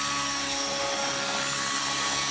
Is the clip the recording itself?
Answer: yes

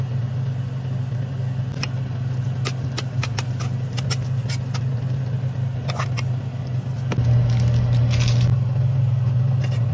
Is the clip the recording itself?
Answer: yes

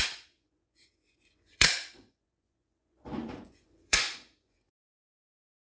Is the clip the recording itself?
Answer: no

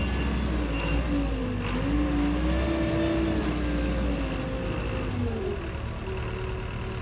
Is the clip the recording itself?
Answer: yes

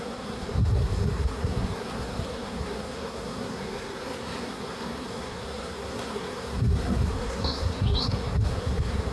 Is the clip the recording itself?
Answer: no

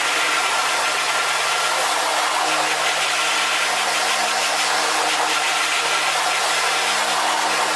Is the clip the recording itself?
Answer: yes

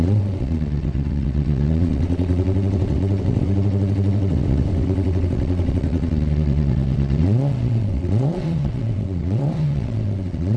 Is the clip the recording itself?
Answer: no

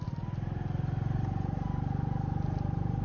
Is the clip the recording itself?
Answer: yes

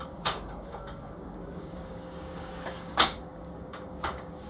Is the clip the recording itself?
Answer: no